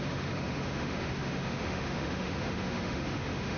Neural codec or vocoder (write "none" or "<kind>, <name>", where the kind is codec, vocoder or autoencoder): autoencoder, DAC-VAE